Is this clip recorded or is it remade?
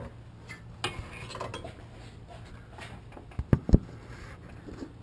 recorded